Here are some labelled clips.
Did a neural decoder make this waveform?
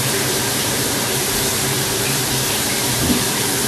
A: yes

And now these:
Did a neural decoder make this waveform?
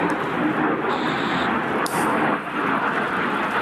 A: no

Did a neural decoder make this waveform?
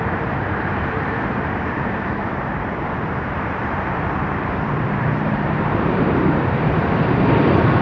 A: yes